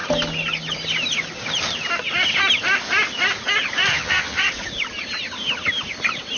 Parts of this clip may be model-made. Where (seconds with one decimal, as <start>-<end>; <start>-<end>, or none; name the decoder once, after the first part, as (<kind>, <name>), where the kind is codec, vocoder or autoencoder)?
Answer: 3.9-4.5 (vocoder, HiFi-GAN)

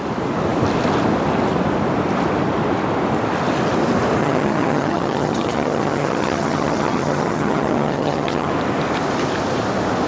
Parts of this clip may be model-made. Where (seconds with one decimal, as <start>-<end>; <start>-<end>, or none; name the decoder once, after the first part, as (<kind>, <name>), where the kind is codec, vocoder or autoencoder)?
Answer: 4.2-8.5 (vocoder, HiFi-GAN)

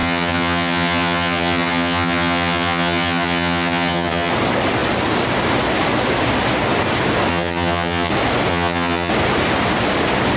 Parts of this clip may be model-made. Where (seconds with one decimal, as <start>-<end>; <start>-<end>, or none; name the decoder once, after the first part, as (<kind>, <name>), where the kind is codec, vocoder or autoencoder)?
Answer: 0.0-4.3 (vocoder, HiFi-GAN); 7.3-8.1; 8.5-9.1

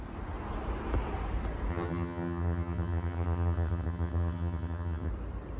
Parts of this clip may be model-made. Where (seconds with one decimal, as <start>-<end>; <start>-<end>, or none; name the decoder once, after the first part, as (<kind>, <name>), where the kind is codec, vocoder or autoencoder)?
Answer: 1.7-5.1 (vocoder, HiFi-GAN)

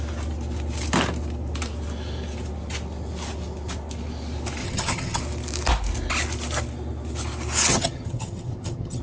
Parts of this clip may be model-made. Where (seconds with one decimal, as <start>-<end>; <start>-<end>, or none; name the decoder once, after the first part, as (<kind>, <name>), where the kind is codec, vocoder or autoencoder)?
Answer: 4.6-5.2 (vocoder, HiFi-GAN); 7.7-9.0

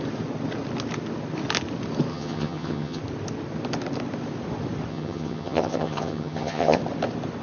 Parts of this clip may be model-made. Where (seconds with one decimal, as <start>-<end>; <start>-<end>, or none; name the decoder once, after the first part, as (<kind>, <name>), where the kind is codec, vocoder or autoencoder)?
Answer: 2.1-3.0 (vocoder, HiFi-GAN); 4.9-6.8

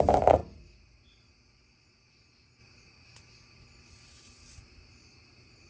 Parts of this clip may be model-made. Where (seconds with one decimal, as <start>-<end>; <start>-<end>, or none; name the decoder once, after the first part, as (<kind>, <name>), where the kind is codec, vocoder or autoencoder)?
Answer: none

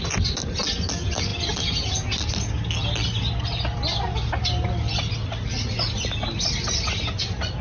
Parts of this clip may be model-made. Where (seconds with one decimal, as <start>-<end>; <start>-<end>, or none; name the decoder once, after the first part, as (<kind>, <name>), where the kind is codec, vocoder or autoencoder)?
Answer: none